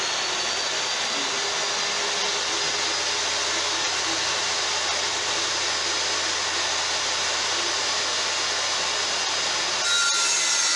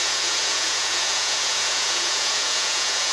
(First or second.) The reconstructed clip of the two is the second